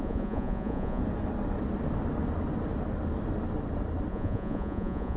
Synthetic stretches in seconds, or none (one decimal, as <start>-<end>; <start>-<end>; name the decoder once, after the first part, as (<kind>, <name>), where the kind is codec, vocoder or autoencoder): 0.0-1.0 (vocoder, Vocos); 4.1-5.2